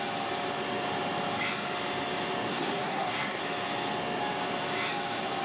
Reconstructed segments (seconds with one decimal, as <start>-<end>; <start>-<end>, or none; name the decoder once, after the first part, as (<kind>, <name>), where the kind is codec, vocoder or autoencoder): 2.5-3.4 (codec, SNAC)